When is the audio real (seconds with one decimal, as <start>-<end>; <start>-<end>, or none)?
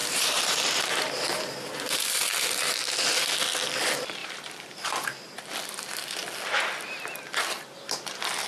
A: 2.7-4.2; 5.2-8.5